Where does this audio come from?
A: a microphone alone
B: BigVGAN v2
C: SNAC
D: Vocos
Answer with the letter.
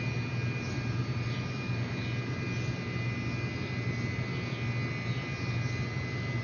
A